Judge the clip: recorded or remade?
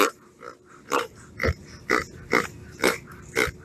remade